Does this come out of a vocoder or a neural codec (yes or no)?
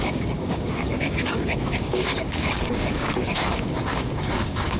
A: yes